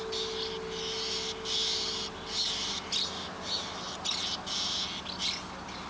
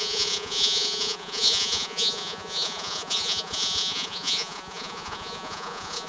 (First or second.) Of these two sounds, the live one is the first